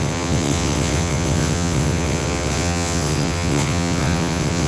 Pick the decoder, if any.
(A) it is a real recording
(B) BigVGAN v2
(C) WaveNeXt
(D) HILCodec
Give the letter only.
C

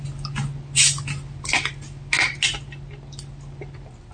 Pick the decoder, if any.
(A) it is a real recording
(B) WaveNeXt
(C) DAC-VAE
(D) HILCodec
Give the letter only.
A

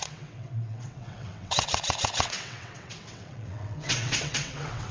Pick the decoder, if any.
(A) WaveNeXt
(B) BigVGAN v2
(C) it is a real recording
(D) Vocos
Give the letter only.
A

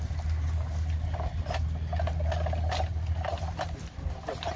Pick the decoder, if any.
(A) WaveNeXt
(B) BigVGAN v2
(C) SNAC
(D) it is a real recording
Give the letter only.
D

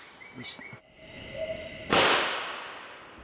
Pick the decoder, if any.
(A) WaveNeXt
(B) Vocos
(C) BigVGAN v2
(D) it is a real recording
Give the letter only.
D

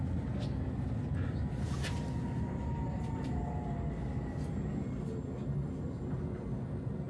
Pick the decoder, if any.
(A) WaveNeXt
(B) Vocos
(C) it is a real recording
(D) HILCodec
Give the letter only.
C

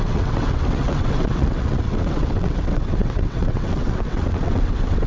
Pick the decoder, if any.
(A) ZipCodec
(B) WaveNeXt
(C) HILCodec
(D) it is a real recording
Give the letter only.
B